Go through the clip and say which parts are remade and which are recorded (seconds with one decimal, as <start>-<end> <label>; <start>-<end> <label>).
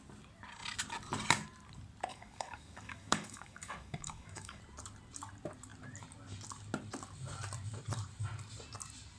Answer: 0.0-2.1 recorded; 2.1-4.6 remade; 4.6-9.2 recorded